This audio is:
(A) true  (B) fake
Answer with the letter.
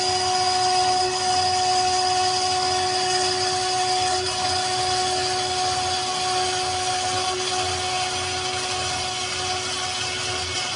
A